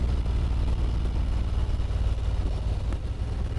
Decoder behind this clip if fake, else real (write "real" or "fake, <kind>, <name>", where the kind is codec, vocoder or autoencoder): real